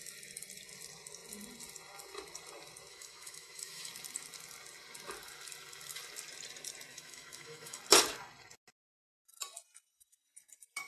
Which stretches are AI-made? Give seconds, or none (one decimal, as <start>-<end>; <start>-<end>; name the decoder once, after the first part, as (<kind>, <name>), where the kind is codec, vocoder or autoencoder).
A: 2.9-3.9 (autoencoder, DAC-VAE); 6.9-7.8